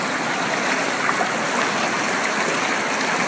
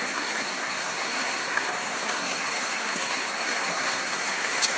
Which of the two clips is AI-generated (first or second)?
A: second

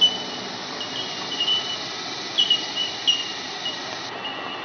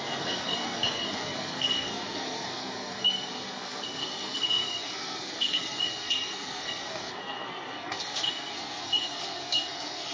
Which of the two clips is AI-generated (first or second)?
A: second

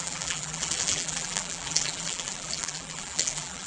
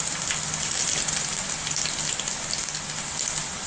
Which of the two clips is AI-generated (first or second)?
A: first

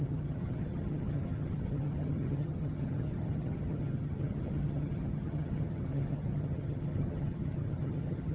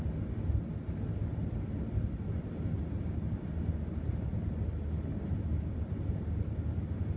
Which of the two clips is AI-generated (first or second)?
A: first